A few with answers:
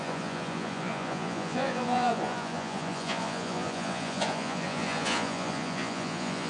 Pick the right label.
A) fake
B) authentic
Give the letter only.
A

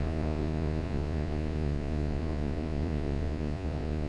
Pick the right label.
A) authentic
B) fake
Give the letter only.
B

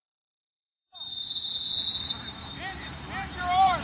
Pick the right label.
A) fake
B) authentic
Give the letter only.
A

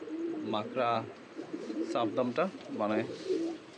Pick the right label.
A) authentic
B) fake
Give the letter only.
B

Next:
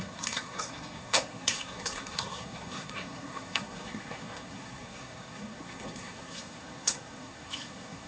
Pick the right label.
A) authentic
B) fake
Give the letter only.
B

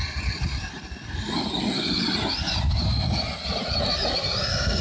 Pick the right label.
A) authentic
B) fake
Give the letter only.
A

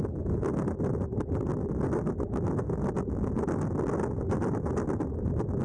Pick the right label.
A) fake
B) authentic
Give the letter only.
B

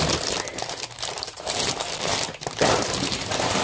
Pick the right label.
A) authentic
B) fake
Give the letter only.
B